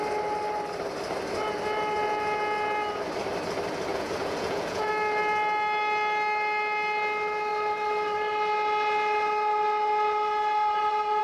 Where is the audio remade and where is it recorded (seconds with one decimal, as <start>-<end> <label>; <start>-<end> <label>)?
0.0-3.9 recorded; 3.9-4.9 remade; 4.9-11.2 recorded